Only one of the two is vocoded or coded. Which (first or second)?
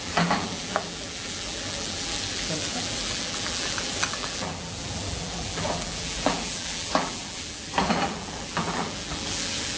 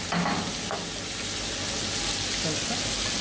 first